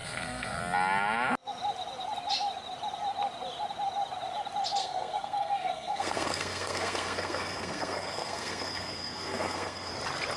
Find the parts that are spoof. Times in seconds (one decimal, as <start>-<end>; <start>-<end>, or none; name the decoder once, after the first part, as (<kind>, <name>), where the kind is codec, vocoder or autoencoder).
0.0-0.6 (codec, SNAC); 4.8-9.9